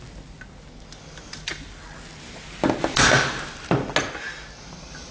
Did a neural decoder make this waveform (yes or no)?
no